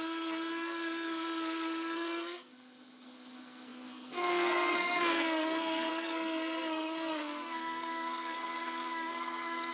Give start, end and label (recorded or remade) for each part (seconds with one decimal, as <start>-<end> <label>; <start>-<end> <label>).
0.0-9.7 remade